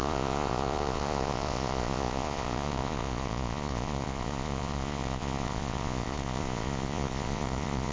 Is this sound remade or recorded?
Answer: remade